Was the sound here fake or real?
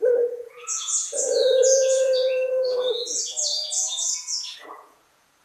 fake